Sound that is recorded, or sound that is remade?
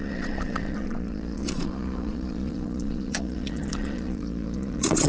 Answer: remade